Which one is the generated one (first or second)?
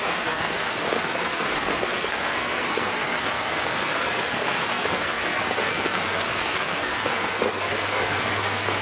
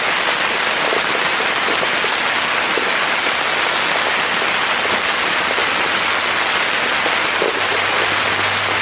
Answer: first